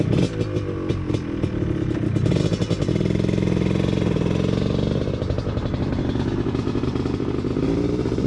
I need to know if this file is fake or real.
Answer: real